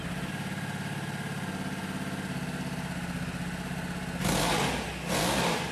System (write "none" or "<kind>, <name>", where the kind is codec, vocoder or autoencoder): none